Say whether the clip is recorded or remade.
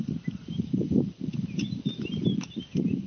recorded